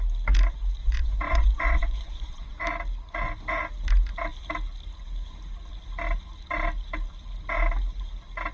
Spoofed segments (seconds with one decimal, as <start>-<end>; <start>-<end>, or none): 0.8-2.6